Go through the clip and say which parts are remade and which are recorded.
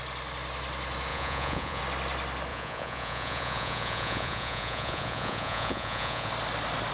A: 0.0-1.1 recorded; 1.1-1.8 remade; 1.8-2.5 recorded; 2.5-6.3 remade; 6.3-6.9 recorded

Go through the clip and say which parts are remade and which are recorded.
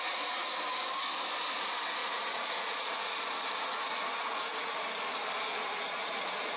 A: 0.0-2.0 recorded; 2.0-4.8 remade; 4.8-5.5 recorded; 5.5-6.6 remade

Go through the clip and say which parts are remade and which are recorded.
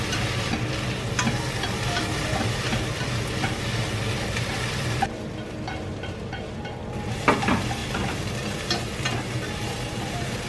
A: 0.0-10.5 recorded